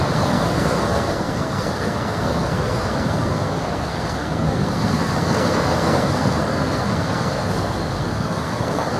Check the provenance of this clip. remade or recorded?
remade